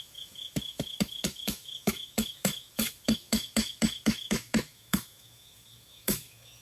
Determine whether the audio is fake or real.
fake